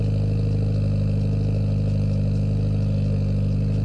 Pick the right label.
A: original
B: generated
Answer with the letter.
A